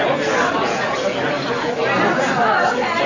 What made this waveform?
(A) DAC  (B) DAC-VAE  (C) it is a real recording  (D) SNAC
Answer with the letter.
C